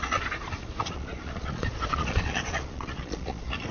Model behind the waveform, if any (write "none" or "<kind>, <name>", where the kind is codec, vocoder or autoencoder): vocoder, Vocos